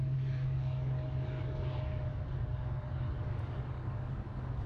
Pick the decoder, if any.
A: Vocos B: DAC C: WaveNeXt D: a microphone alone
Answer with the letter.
B